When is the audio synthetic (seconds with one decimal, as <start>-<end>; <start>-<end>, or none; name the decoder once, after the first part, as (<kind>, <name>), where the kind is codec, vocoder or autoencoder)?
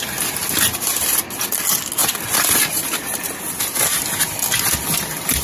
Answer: 2.0-3.4 (vocoder, BigVGAN v2)